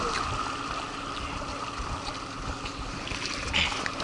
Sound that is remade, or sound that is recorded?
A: recorded